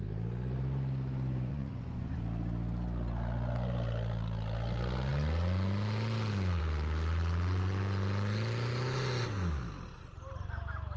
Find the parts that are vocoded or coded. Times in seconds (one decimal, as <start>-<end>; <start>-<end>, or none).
1.5-2.2